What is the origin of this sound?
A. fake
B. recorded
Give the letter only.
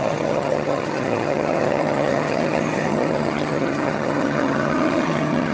A